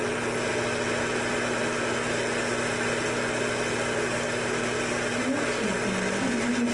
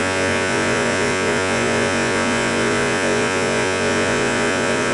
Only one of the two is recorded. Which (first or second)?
first